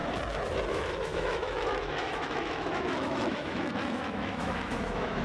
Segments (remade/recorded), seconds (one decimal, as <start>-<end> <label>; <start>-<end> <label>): 0.0-0.7 recorded; 0.7-5.2 remade